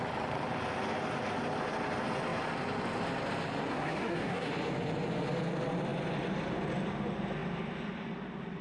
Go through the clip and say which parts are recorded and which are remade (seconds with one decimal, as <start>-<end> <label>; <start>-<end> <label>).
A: 0.0-3.7 recorded; 3.7-4.5 remade; 4.5-8.6 recorded